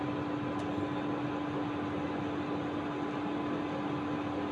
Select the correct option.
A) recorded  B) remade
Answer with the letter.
A